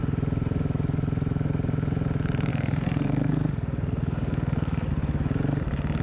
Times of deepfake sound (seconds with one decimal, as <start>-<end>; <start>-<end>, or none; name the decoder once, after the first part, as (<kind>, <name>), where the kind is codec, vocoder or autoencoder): 2.5-4.9 (codec, SNAC)